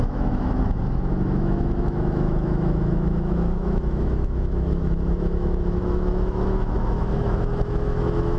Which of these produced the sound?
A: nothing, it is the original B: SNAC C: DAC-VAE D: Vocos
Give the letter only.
C